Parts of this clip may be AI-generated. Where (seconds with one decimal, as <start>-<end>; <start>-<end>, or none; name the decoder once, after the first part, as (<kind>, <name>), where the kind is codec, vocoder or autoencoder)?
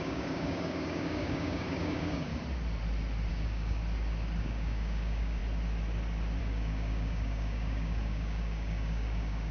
0.0-2.3 (codec, DAC); 3.3-3.8; 4.4-5.4; 6.4-9.5